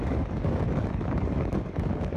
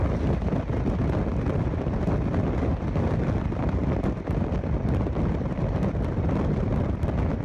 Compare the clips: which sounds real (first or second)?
second